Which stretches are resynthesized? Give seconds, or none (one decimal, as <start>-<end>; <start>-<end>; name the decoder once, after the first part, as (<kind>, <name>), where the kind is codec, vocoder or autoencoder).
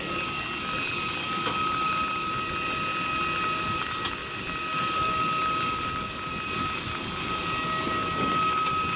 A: none